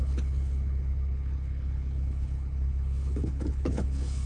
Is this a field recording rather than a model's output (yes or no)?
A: no